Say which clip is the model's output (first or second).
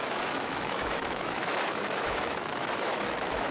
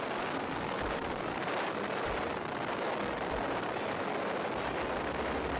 first